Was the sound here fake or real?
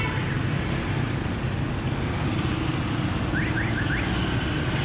real